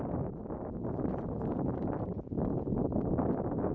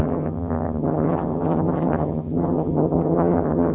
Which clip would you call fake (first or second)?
second